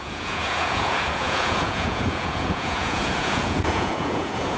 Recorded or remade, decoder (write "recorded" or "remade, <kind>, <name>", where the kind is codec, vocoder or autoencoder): remade, vocoder, Vocos